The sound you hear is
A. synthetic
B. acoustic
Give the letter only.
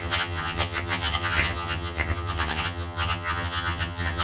A